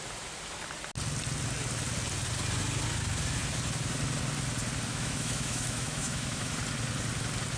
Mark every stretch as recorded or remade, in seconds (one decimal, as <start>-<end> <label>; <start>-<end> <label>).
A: 0.0-4.9 recorded; 4.9-6.5 remade; 6.5-7.6 recorded